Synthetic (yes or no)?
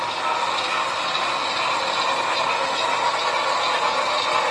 no